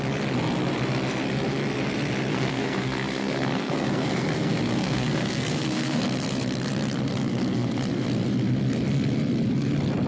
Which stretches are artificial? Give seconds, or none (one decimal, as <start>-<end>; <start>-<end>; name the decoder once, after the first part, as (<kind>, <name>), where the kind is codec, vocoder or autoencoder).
2.3-6.0 (codec, SNAC)